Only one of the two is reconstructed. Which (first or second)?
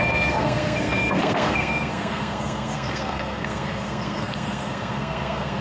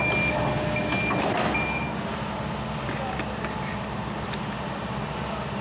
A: first